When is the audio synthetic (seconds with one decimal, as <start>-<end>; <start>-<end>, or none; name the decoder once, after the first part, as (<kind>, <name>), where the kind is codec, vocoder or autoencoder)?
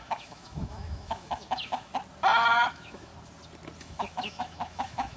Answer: 0.0-1.9 (autoencoder, DAC-VAE); 2.7-3.1; 3.8-5.2